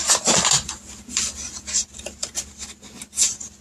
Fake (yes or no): no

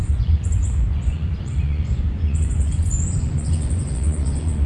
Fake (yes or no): yes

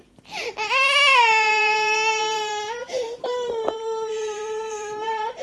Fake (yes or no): yes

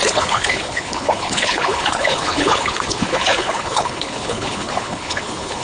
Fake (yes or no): yes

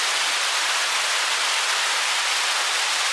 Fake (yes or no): no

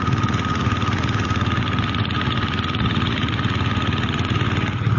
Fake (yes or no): yes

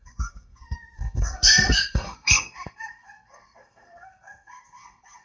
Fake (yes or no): yes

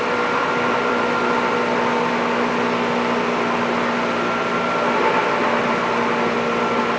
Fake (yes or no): no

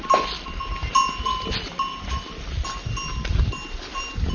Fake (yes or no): no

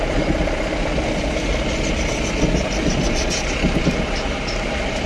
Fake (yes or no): no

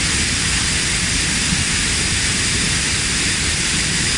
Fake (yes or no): no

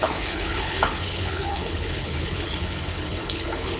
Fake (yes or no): yes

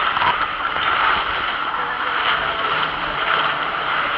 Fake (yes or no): no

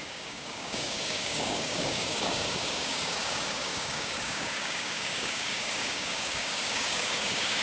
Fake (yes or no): yes